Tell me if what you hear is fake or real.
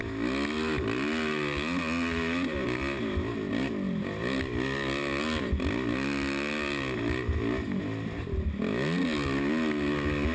real